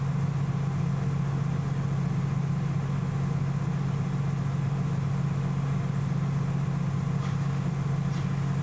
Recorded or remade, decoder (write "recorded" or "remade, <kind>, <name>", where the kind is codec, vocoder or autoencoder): recorded